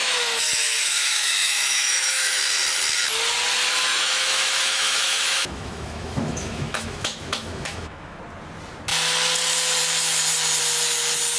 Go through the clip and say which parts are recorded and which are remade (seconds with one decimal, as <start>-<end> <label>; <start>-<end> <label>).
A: 0.0-2.4 remade; 2.4-3.9 recorded; 3.9-8.2 remade; 8.2-11.4 recorded